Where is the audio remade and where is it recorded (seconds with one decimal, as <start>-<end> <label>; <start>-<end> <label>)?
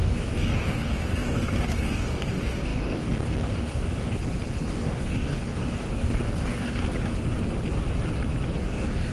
0.0-4.2 remade; 4.2-4.7 recorded; 4.7-6.8 remade; 6.8-8.6 recorded; 8.6-9.1 remade